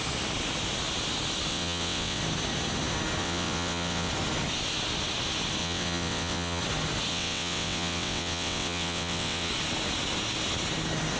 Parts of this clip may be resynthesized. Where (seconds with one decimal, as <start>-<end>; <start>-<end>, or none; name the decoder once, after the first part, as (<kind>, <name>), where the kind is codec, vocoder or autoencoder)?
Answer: 1.5-2.2 (vocoder, WaveNeXt); 3.2-4.1; 5.6-6.6; 7.1-9.5